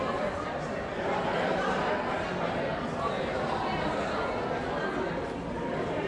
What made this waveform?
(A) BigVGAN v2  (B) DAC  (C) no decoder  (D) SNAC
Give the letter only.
C